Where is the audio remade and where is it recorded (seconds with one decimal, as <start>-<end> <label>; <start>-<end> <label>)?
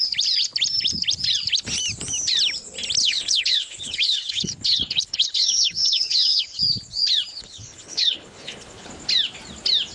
0.0-3.0 recorded; 3.0-6.6 remade; 6.6-7.3 recorded; 7.3-8.9 remade; 8.9-9.9 recorded